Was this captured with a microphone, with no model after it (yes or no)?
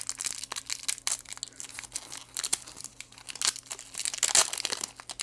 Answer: yes